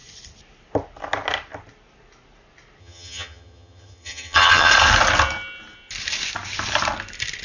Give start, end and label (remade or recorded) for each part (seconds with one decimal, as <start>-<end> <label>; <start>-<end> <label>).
0.0-2.8 recorded; 2.8-4.7 remade; 4.7-7.4 recorded